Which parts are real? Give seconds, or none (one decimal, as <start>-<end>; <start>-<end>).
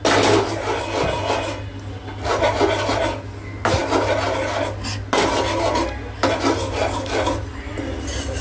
0.0-8.4